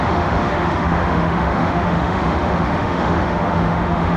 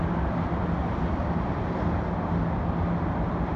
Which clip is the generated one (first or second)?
first